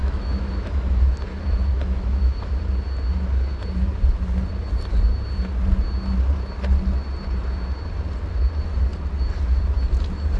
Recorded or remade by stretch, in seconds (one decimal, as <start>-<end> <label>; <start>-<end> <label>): 0.0-1.1 remade; 1.1-1.7 recorded; 1.7-2.6 remade; 2.6-10.4 recorded